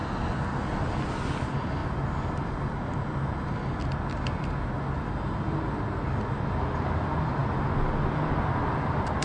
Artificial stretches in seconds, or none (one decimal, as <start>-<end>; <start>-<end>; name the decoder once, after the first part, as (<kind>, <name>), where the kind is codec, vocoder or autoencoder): none